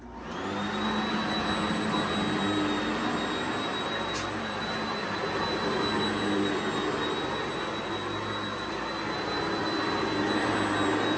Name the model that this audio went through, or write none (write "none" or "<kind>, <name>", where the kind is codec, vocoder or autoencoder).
none